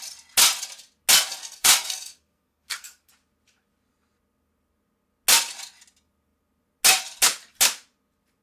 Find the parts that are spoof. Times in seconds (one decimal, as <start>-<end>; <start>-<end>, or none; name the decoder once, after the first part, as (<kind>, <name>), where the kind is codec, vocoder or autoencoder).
1.4-3.1 (codec, SNAC)